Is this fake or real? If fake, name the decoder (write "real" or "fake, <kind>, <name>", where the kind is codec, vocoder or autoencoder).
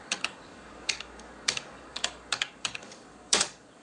fake, codec, DAC